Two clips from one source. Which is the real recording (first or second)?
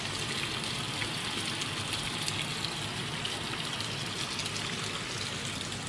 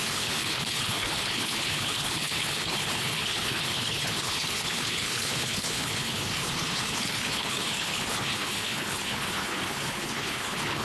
first